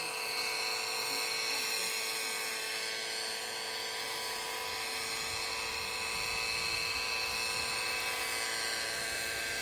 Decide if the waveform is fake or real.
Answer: real